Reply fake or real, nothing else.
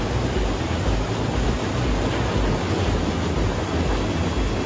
real